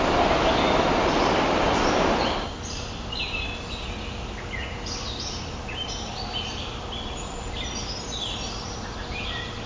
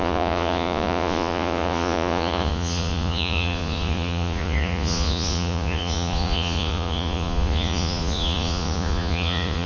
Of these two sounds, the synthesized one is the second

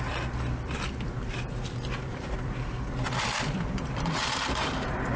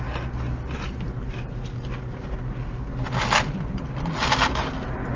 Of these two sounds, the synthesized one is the first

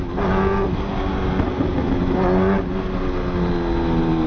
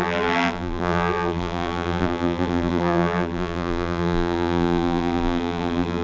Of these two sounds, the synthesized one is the second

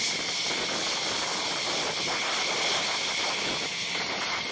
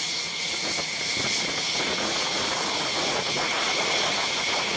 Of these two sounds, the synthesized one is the second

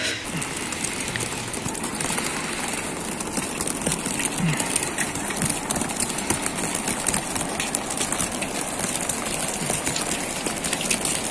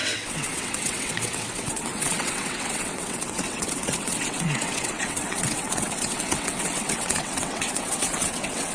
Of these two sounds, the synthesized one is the second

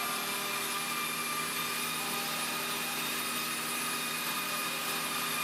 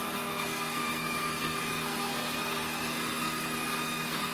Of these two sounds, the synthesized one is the second